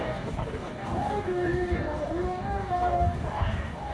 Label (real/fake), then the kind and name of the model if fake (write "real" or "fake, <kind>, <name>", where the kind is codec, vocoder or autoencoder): fake, codec, DAC